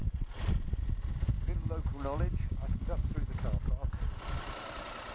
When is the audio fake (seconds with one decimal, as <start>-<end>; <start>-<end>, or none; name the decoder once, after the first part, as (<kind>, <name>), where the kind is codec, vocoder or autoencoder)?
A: none